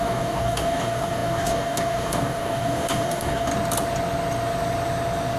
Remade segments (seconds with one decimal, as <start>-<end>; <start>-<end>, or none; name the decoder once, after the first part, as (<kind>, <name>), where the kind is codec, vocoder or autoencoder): 0.0-3.5 (codec, DAC)